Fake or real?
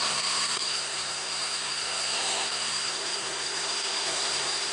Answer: fake